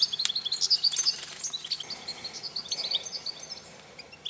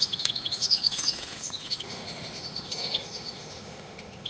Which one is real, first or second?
first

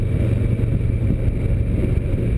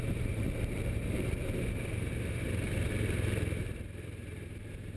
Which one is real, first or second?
first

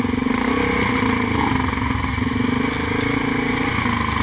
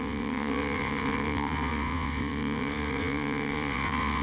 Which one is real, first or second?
first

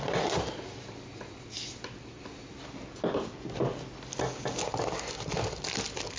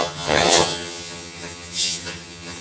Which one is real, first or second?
first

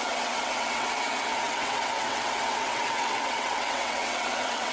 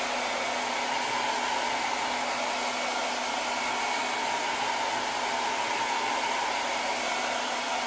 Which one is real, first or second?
second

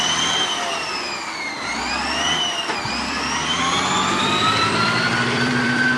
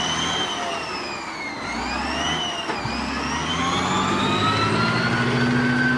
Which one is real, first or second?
second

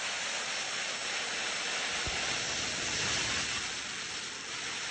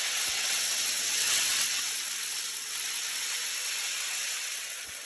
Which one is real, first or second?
first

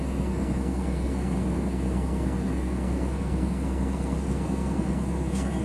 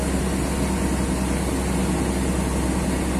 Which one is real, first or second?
second